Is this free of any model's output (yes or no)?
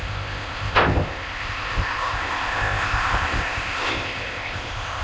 no